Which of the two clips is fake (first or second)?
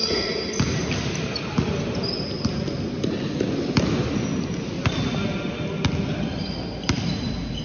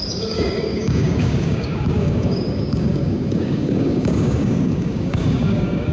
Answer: second